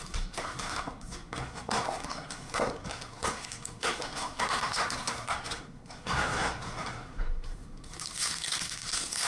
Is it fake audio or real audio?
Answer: fake